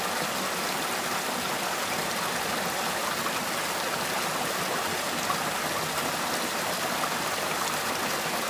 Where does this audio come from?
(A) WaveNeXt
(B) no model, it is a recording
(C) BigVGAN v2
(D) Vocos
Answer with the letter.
B